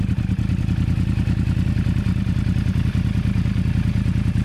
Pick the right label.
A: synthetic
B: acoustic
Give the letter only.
B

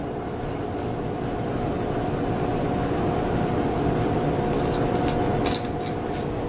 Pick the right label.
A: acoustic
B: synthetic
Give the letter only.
A